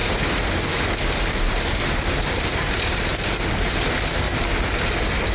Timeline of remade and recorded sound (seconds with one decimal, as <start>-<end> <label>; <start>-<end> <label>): 0.0-5.3 recorded